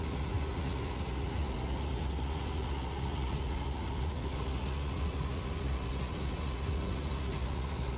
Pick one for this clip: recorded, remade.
remade